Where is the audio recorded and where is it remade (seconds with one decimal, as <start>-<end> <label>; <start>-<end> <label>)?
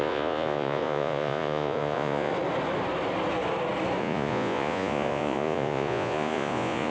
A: 0.0-2.3 remade; 2.3-4.0 recorded; 4.0-6.9 remade